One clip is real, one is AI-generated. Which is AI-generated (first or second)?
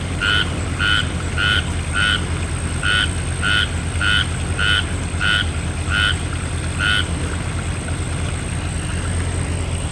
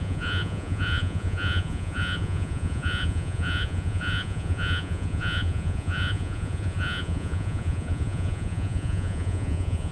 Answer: second